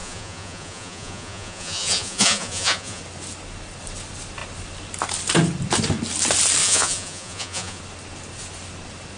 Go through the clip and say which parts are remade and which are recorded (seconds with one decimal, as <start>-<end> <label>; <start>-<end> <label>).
0.0-3.0 remade; 3.0-6.6 recorded; 6.6-7.8 remade; 7.8-9.2 recorded